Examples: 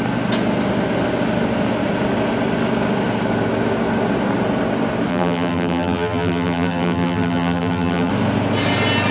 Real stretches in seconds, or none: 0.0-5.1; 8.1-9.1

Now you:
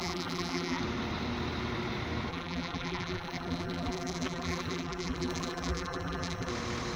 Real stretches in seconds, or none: 0.8-2.3; 6.5-7.0

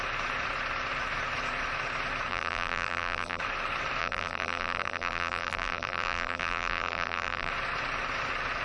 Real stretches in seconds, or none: 0.0-2.3; 3.4-4.0; 7.5-8.6

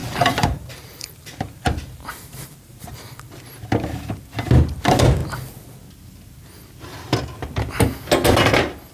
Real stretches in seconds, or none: 3.3-8.9

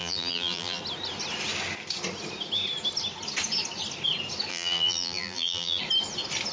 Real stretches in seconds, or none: 0.8-4.5; 5.8-6.5